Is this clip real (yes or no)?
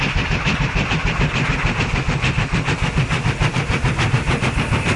yes